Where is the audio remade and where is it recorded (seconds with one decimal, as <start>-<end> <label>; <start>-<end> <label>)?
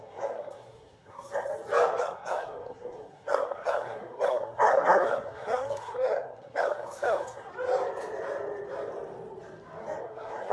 0.0-1.5 remade; 1.5-2.0 recorded; 2.0-7.5 remade; 7.5-10.0 recorded; 10.0-10.5 remade